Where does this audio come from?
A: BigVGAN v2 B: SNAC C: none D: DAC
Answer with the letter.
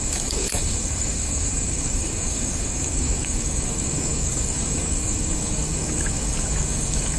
D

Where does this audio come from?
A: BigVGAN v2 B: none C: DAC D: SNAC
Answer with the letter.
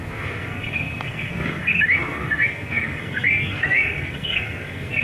D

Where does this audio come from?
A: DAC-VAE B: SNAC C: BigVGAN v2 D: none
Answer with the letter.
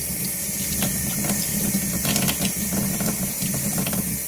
D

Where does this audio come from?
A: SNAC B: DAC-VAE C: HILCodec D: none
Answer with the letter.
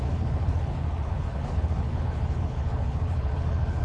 C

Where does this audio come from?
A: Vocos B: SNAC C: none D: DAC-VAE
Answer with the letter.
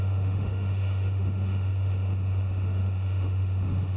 D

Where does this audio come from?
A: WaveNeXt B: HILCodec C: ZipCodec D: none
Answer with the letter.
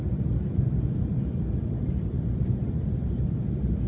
D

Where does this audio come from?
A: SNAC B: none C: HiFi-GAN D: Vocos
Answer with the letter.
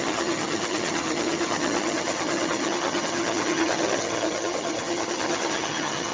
C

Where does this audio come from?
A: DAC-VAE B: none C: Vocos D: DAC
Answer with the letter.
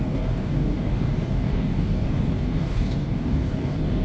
D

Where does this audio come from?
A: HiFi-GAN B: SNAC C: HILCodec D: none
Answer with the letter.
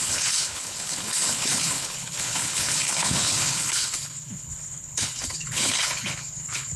C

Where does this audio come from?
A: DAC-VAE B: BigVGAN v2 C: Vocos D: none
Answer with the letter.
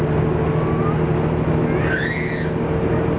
D